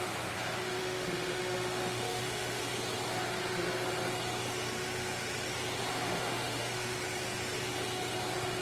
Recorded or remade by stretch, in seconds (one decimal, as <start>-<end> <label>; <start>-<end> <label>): 0.0-0.8 recorded; 0.8-2.6 remade; 2.6-5.9 recorded; 5.9-7.0 remade; 7.0-8.6 recorded